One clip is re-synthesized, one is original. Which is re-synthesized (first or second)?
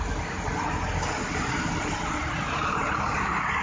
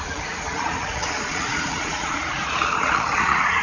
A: second